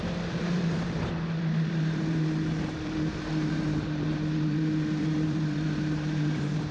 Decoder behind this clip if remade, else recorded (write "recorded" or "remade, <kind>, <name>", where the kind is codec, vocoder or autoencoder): remade, vocoder, BigVGAN v2